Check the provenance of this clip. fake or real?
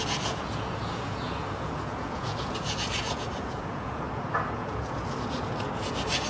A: fake